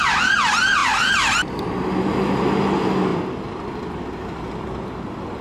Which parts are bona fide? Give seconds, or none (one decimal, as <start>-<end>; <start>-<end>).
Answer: 0.0-5.4